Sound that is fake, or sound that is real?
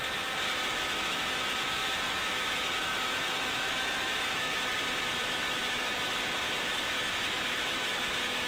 fake